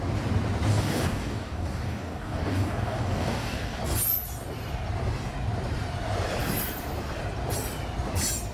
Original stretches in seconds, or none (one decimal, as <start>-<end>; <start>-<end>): 0.0-0.7; 3.8-8.5